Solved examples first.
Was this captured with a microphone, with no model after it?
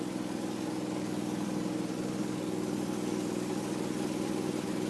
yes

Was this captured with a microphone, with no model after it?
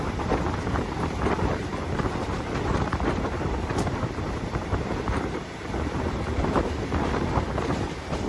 no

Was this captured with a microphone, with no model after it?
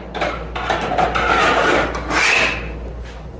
yes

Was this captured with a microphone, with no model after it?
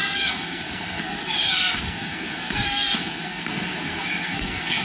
no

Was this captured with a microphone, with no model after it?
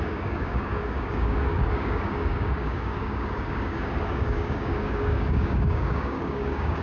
no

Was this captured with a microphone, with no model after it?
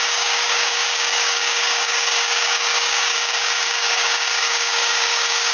no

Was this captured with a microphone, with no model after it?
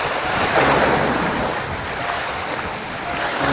yes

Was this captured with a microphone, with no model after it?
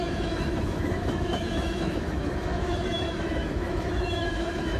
no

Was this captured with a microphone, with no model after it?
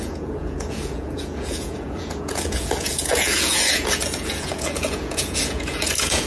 no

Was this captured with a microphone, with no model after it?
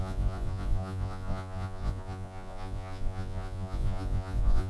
no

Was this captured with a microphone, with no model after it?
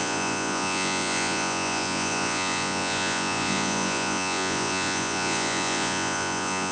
no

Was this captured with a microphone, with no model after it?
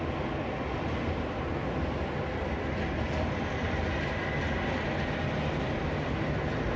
yes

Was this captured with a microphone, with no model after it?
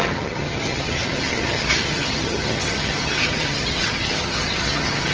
no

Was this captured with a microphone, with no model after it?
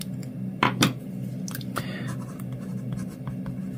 yes